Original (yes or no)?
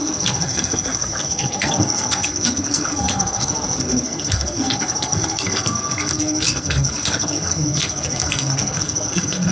no